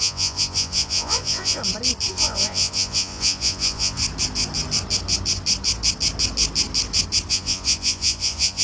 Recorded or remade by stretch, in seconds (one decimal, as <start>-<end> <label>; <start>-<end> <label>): 0.0-1.6 remade; 1.6-2.1 recorded; 2.1-4.0 remade; 4.0-7.3 recorded; 7.3-8.6 remade